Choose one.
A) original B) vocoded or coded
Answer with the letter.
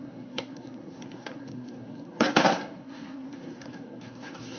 B